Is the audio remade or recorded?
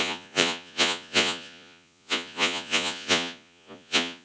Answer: remade